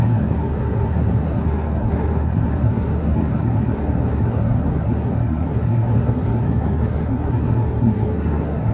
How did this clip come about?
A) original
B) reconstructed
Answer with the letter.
B